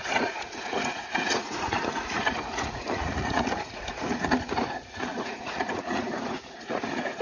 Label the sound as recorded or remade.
remade